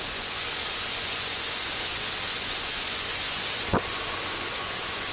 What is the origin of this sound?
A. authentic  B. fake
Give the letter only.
B